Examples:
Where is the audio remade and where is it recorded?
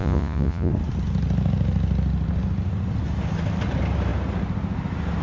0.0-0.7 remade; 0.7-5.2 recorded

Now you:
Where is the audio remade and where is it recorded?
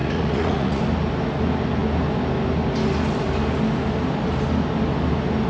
0.0-0.8 remade; 0.8-5.5 recorded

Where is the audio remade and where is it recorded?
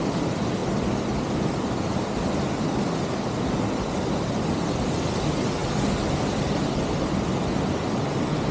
0.0-8.5 recorded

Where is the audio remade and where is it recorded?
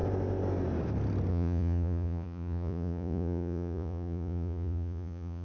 0.0-1.3 recorded; 1.3-5.4 remade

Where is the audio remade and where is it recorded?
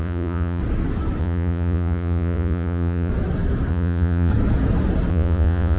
0.0-0.6 remade; 0.6-1.2 recorded; 1.2-3.1 remade; 3.1-3.7 recorded; 3.7-4.3 remade; 4.3-5.1 recorded; 5.1-5.8 remade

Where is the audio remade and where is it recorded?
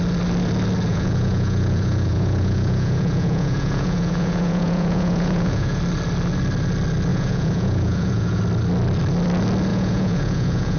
0.0-0.9 recorded; 0.9-5.8 remade; 5.8-7.1 recorded; 7.1-8.4 remade; 8.4-9.7 recorded; 9.7-10.8 remade